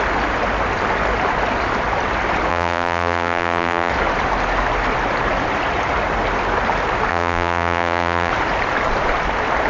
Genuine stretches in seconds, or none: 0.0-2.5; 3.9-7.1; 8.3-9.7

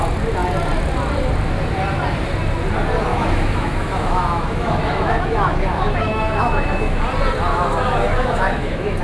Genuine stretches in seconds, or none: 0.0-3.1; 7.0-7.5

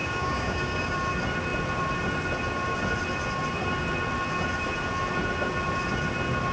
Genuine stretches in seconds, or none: 1.0-6.5

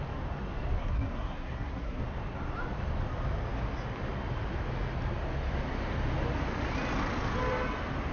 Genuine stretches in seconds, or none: 0.0-0.8; 2.0-8.1